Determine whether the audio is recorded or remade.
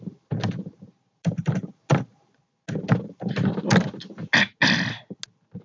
recorded